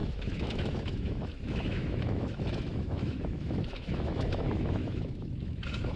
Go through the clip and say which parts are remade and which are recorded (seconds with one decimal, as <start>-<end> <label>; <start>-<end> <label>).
0.0-6.0 remade